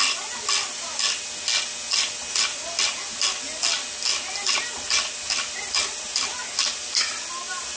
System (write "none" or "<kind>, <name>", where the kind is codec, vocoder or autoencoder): none